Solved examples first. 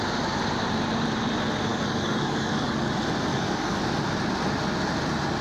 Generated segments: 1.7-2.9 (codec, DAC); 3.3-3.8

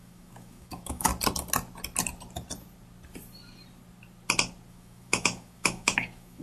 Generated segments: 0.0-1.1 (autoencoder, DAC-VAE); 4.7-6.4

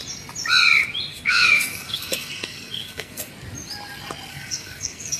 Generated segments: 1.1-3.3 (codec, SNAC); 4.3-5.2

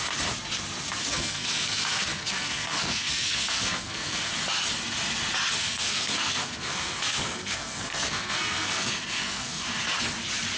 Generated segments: 1.0-4.3 (codec, SNAC); 5.6-9.6